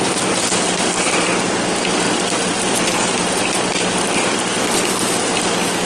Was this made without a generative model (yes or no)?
yes